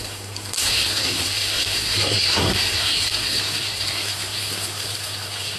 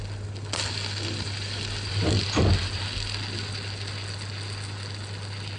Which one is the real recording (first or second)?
second